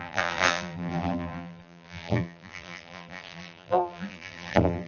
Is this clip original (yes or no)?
no